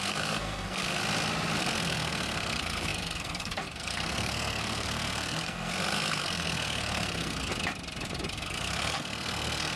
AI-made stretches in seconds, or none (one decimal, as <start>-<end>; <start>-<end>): 0.0-1.0; 1.6-7.5; 8.3-9.8